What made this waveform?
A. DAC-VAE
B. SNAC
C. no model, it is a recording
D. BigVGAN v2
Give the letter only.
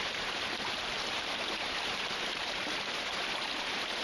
D